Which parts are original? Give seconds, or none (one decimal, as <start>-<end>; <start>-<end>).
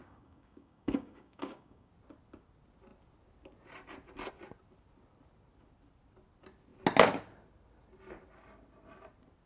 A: 1.9-9.5